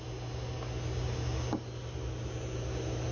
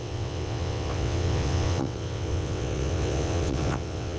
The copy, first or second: second